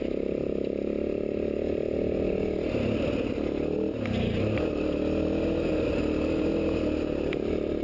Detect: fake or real real